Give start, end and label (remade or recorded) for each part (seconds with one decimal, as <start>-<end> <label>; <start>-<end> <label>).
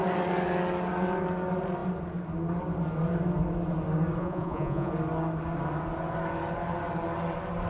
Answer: 0.0-4.2 recorded; 4.2-4.9 remade; 4.9-7.7 recorded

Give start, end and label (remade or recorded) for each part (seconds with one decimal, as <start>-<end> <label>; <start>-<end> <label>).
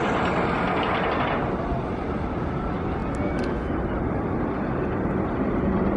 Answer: 0.0-6.0 recorded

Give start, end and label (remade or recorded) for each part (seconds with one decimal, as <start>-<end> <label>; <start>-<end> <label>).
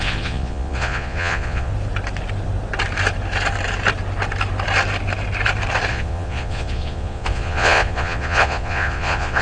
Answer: 0.0-1.7 remade; 1.7-5.9 recorded; 5.9-9.4 remade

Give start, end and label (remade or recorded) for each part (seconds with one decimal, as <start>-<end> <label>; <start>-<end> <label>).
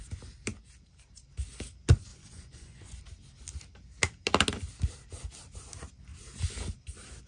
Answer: 0.0-2.1 recorded; 2.1-3.0 remade; 3.0-7.3 recorded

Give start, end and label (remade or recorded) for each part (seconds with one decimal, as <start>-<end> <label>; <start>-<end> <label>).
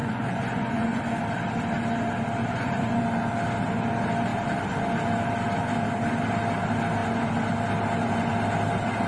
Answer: 0.0-1.0 remade; 1.0-2.4 recorded; 2.4-3.0 remade; 3.0-9.1 recorded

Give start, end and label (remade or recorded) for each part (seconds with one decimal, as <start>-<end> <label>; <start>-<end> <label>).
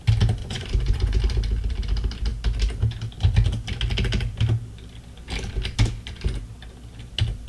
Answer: 0.0-0.4 recorded; 0.4-1.2 remade; 1.2-7.5 recorded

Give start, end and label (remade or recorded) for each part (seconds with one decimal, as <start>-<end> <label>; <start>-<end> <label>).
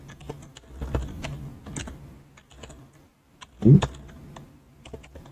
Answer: 0.0-5.3 recorded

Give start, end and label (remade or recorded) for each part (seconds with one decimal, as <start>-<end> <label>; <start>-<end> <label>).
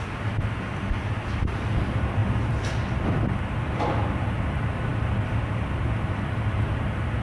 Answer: 0.0-7.2 recorded